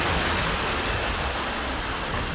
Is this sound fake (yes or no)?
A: no